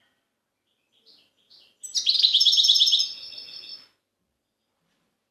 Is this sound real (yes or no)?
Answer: yes